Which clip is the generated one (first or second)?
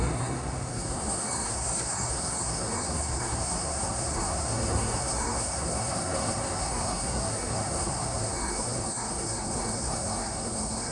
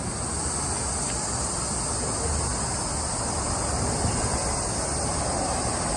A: first